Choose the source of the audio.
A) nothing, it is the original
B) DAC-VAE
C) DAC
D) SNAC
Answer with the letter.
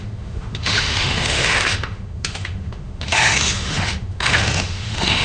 B